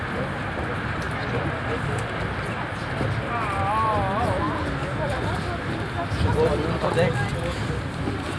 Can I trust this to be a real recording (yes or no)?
yes